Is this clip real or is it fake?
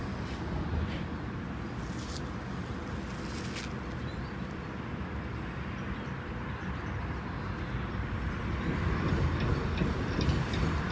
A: real